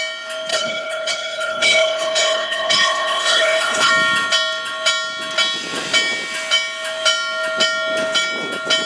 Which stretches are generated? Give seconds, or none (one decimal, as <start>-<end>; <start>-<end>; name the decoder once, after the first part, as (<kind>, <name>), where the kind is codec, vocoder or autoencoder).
0.5-3.9 (codec, HILCodec)